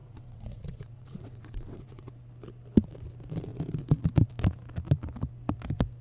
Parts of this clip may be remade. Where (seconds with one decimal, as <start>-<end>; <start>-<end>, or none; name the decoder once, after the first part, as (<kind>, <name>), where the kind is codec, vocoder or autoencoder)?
0.0-2.1 (vocoder, WaveNeXt)